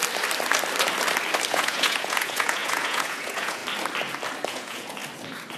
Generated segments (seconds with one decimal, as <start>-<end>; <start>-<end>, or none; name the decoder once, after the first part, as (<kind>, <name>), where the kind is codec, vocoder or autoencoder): 1.5-3.6 (vocoder, Vocos); 4.5-5.0

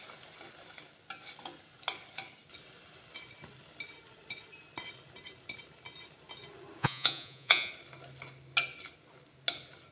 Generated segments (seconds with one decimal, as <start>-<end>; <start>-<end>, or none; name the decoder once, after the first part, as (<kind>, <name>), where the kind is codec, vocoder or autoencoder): 6.8-7.7 (vocoder, Vocos)

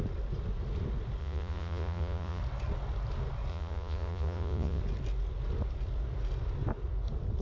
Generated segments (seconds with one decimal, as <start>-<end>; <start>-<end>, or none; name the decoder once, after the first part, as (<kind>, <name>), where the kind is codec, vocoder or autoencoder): 1.2-2.4 (vocoder, Vocos); 3.5-4.8